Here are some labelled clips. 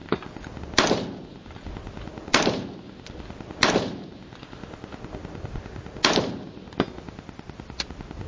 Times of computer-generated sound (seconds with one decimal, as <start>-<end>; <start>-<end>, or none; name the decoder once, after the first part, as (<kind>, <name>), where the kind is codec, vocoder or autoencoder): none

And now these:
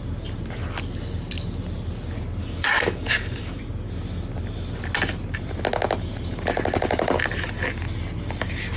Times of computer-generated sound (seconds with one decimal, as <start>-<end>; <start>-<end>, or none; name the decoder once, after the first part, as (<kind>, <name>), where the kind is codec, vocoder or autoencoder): 2.4-3.6 (codec, DAC)

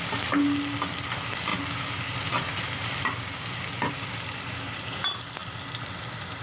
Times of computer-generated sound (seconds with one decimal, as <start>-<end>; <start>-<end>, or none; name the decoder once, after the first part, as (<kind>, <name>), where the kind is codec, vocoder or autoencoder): none

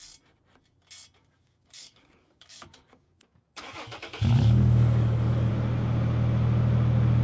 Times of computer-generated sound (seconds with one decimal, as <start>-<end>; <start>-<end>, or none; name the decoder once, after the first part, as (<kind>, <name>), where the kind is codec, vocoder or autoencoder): 1.2-5.5 (codec, DAC)